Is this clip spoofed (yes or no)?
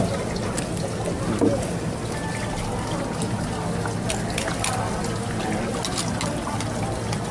no